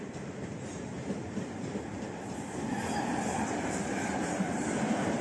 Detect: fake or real fake